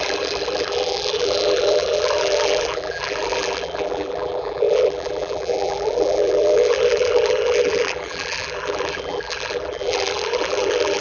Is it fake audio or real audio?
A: fake